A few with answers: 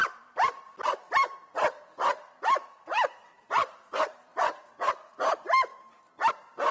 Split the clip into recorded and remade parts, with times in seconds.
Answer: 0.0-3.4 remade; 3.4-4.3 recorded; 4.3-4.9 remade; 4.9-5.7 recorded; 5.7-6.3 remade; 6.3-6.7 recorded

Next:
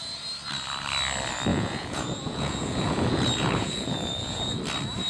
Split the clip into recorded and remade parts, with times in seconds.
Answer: 0.0-1.5 recorded; 1.5-4.6 remade; 4.6-5.1 recorded

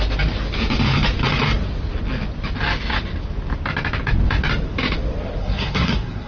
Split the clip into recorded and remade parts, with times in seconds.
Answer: 0.0-5.4 recorded; 5.4-6.3 remade

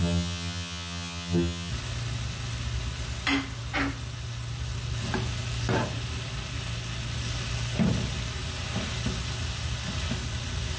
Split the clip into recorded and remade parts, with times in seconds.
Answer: 0.0-1.7 remade; 1.7-10.8 recorded